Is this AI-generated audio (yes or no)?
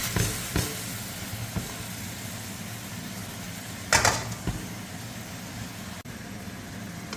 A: no